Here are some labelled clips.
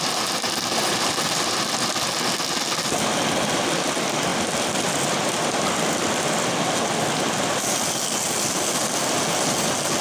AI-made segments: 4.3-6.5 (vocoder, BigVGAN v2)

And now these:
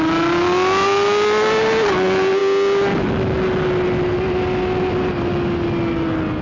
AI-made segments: none

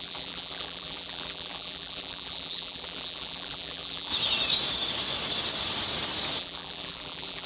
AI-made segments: 0.0-4.1 (vocoder, BigVGAN v2); 6.4-7.5

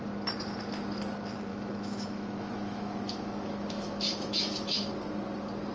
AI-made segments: 1.5-4.9 (autoencoder, DAC-VAE)

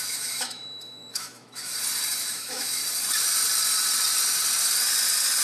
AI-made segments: 0.0-1.7 (autoencoder, DAC-VAE); 2.3-2.8

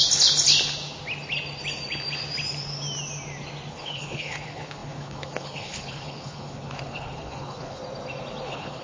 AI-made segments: 3.7-7.8 (codec, HILCodec); 8.4-8.8

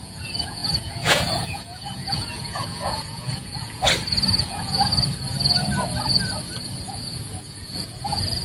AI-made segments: 0.0-3.8 (vocoder, Vocos); 4.4-4.9; 6.9-8.4

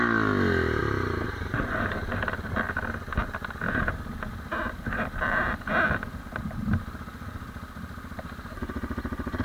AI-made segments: 0.8-1.6 (vocoder, BigVGAN v2)